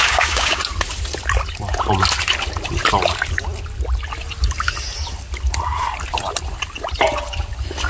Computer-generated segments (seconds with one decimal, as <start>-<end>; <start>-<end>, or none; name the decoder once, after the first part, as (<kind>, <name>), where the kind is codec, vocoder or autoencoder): 0.0-0.6 (codec, DAC)